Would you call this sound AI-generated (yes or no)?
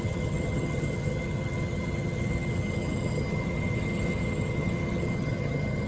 yes